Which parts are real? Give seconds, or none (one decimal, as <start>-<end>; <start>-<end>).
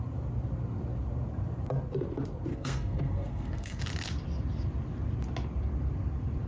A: 0.0-2.5; 3.8-6.5